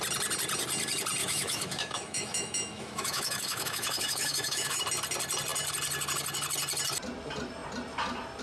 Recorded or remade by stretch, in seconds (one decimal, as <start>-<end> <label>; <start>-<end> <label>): 0.0-1.2 recorded; 1.2-4.8 remade; 4.8-8.4 recorded